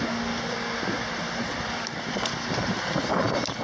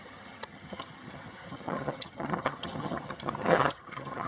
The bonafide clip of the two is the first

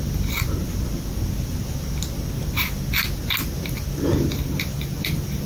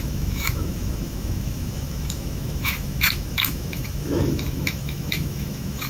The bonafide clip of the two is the first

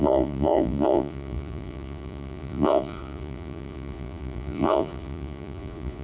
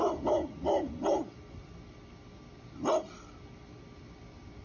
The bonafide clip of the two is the second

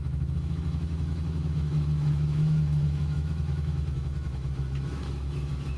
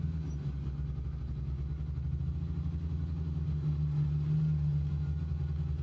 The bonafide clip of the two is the second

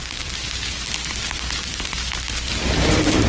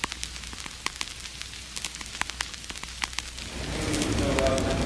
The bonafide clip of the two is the second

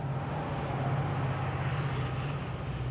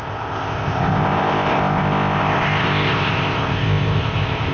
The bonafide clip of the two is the first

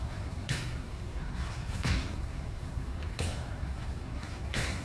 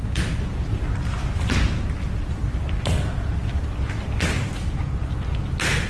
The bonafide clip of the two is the second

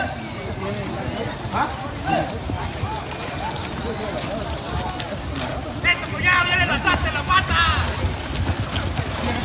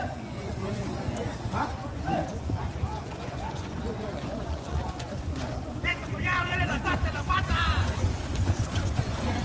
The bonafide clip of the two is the first